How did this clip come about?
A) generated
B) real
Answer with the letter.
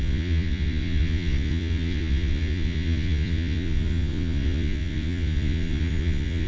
A